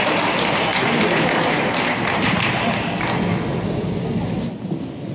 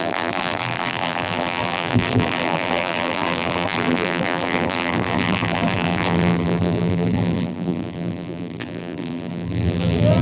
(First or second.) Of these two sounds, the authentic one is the first